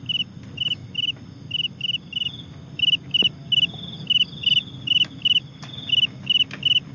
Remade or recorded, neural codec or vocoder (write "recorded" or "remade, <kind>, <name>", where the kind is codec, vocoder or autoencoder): recorded